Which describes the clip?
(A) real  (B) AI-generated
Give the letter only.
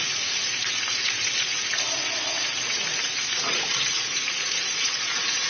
B